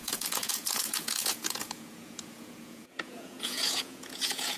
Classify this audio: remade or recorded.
remade